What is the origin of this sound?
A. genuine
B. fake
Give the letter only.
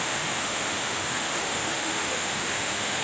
B